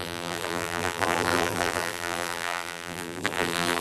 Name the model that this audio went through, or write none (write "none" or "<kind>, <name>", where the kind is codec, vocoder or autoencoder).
vocoder, BigVGAN v2